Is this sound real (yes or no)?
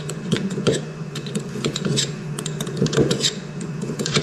no